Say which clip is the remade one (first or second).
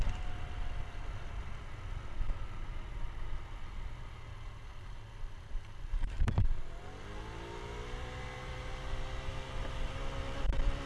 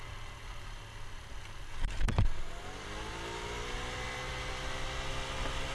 first